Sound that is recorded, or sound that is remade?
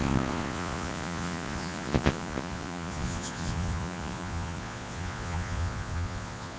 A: remade